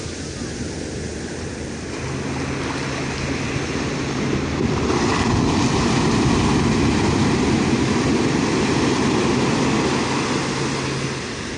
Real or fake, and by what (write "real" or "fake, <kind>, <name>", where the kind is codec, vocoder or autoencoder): real